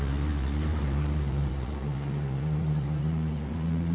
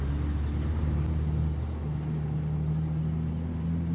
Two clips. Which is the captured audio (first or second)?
second